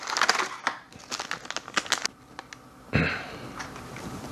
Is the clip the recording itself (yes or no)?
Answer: yes